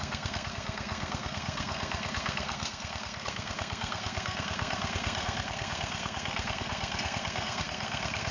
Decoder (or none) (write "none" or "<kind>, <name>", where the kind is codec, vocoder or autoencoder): codec, SNAC